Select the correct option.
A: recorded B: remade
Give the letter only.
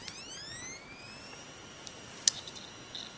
A